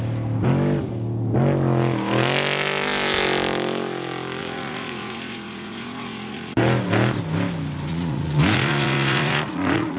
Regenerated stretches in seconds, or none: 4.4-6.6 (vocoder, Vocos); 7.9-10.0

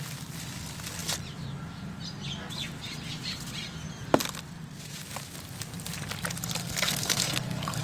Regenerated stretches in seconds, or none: 6.6-7.8 (codec, SNAC)

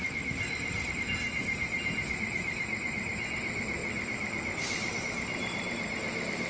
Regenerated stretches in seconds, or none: none